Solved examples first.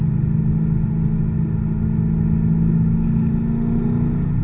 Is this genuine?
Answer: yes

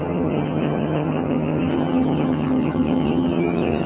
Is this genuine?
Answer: no